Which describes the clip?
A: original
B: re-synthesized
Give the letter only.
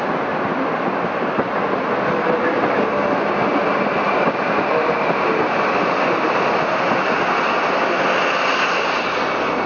A